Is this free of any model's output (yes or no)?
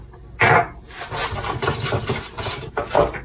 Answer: yes